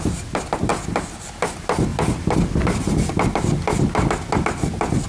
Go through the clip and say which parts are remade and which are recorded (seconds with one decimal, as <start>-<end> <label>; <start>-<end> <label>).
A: 0.0-5.1 recorded

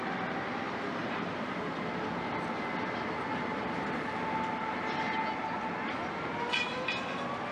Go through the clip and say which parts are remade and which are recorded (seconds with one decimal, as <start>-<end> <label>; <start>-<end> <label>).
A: 0.0-1.0 recorded; 1.0-1.7 remade; 1.7-3.3 recorded; 3.3-4.0 remade; 4.0-7.5 recorded

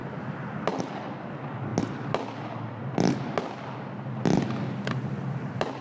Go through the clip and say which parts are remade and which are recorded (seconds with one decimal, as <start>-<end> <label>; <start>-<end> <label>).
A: 0.0-5.8 recorded

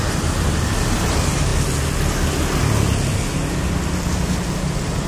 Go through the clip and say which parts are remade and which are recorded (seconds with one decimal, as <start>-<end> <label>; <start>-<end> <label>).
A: 0.0-1.5 remade; 1.5-4.6 recorded; 4.6-5.1 remade

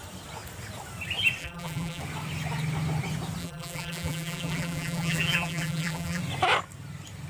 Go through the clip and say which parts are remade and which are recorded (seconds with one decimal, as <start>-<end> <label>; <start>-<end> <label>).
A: 0.0-1.4 recorded; 1.4-2.0 remade; 2.0-3.4 recorded; 3.4-6.2 remade; 6.2-7.3 recorded

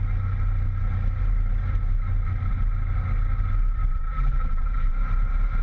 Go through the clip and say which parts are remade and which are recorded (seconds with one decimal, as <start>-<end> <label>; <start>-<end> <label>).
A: 0.0-3.9 recorded; 3.9-4.9 remade; 4.9-5.6 recorded

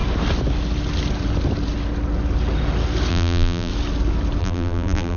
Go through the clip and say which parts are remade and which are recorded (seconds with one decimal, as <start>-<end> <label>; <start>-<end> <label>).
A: 0.0-3.1 recorded; 3.1-3.7 remade; 3.7-4.4 recorded; 4.4-5.2 remade

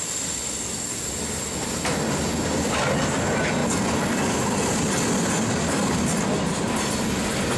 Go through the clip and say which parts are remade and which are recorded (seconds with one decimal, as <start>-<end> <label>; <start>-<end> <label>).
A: 0.0-1.5 remade; 1.5-7.6 recorded